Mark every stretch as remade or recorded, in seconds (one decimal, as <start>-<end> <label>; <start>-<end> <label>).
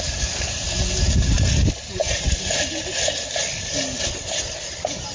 0.0-5.1 recorded